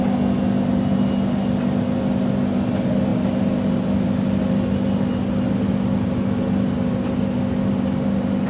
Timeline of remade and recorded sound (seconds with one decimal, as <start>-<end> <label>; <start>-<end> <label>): 0.0-8.5 recorded